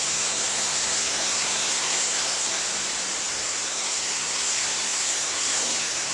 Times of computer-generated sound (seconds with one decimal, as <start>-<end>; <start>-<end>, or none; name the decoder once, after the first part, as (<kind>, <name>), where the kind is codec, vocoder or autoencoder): 0.0-2.6 (codec, SNAC); 3.3-6.1